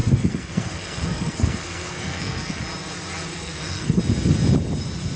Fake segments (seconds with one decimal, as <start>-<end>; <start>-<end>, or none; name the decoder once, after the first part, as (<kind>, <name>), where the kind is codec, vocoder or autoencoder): 0.0-2.6 (codec, SNAC); 3.3-4.0